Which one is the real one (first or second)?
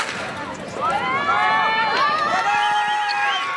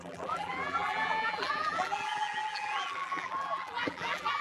first